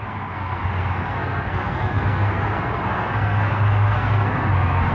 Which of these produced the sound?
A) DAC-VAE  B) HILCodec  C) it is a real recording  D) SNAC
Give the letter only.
D